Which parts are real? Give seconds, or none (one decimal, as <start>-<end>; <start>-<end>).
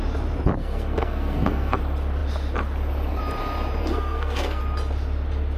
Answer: 0.0-0.6; 1.8-3.8; 4.6-5.6